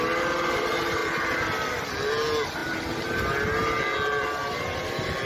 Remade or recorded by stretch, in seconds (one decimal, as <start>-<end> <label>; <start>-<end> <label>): 0.0-5.2 recorded